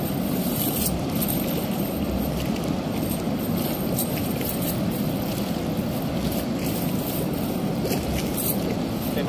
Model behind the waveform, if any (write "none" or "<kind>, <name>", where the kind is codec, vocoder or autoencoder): none